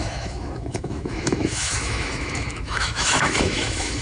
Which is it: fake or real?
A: fake